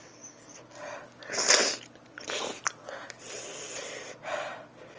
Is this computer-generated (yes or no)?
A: no